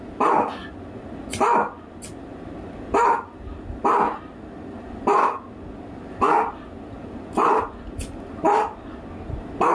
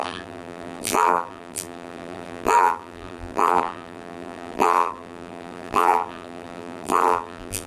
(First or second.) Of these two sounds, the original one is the first